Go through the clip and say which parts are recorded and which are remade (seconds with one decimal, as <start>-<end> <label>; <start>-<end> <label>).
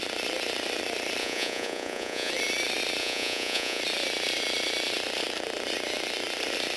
0.0-1.2 recorded; 1.2-2.3 remade; 2.3-3.0 recorded; 3.0-3.8 remade; 3.8-6.8 recorded